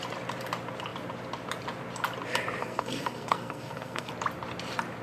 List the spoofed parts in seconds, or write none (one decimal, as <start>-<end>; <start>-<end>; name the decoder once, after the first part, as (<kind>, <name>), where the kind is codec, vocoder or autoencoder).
2.6-4.1 (codec, SNAC)